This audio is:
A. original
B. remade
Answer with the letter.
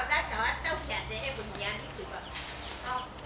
A